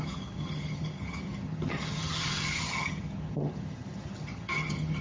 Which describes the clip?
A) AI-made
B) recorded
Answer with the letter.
A